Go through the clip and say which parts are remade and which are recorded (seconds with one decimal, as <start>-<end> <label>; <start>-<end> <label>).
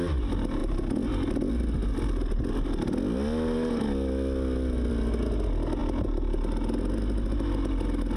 0.0-8.2 recorded